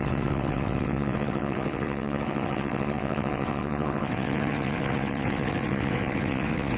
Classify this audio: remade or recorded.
remade